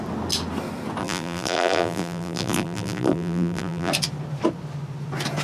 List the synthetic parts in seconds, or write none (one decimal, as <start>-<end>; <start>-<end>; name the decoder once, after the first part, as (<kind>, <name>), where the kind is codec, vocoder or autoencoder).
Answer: 1.0-3.9 (vocoder, BigVGAN v2)